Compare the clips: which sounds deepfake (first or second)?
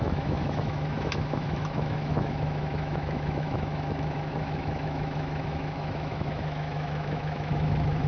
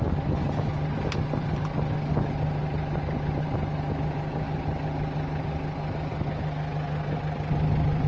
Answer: first